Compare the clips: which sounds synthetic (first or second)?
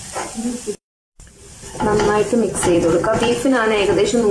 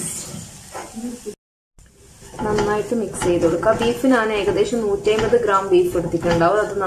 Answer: first